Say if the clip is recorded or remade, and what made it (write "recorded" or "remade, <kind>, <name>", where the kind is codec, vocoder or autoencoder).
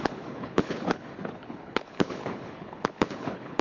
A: remade, codec, HILCodec